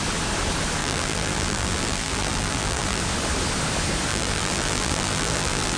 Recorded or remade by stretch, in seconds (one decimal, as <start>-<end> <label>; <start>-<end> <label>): 0.0-0.8 recorded; 0.8-3.0 remade; 3.0-4.1 recorded; 4.1-5.8 remade